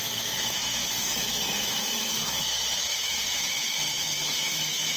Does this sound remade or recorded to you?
remade